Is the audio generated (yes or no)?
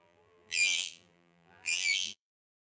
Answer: yes